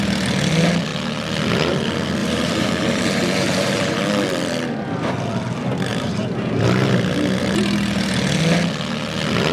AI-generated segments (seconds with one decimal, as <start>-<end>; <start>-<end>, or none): 2.2-4.0; 5.9-6.6